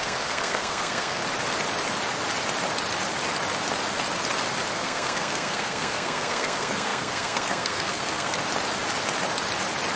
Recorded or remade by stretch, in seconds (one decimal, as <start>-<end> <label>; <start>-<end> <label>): 0.0-1.2 remade; 1.2-4.7 recorded; 4.7-8.4 remade; 8.4-10.0 recorded